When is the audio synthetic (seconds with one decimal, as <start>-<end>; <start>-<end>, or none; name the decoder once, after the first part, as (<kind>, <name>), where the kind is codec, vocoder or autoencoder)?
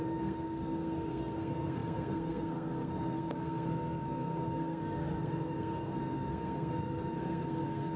0.0-8.0 (codec, SNAC)